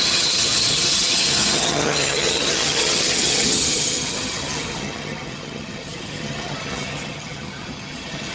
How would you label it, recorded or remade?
remade